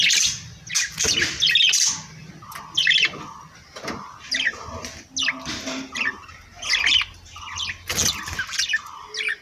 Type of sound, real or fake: real